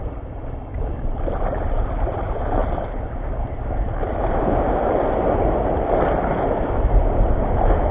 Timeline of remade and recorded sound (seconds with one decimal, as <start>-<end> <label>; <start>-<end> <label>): 0.0-2.6 remade; 2.6-3.4 recorded; 3.4-7.9 remade